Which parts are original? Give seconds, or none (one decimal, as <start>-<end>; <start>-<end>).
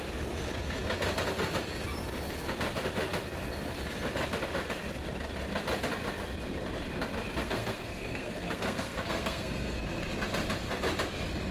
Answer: 0.0-7.4; 9.8-11.5